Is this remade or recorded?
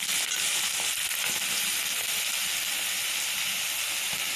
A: recorded